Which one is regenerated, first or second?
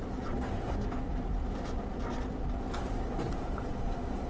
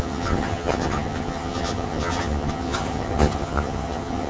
second